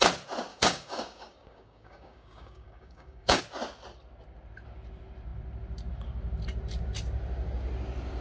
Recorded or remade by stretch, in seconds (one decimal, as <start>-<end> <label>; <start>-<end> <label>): 0.0-0.5 recorded; 0.5-3.4 remade; 3.4-8.2 recorded